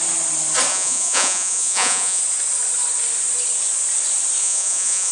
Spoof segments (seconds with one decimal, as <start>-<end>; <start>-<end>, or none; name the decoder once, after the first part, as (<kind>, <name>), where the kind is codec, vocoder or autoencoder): 0.7-2.2 (vocoder, Vocos); 4.4-5.1